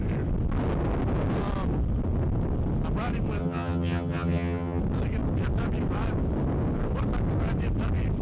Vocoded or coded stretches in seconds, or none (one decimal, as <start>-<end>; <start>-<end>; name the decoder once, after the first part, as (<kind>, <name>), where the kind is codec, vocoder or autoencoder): 3.4-4.8 (vocoder, HiFi-GAN)